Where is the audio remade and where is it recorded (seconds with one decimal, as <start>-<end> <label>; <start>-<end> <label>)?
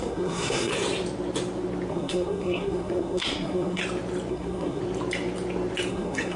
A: 0.0-0.7 remade; 0.7-1.9 recorded; 1.9-3.8 remade; 3.8-4.3 recorded; 4.3-4.8 remade; 4.8-5.9 recorded; 5.9-6.4 remade